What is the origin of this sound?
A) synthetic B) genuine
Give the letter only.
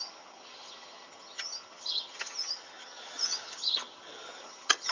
A